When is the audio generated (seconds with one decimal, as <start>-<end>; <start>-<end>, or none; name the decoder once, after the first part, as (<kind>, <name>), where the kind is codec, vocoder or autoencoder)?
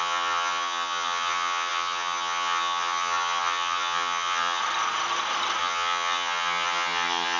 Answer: 0.0-4.6 (vocoder, HiFi-GAN); 5.6-7.4